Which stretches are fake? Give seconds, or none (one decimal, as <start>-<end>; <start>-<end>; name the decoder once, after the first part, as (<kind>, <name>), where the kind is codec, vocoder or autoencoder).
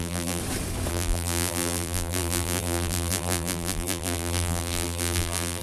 0.0-0.4 (vocoder, BigVGAN v2); 0.9-5.6